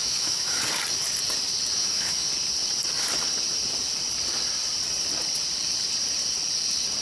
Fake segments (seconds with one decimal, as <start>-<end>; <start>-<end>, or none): 0.0-0.6; 1.8-2.3